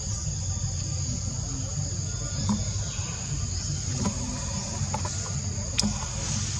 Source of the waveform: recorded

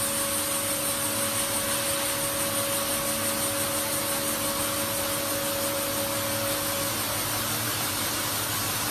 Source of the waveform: recorded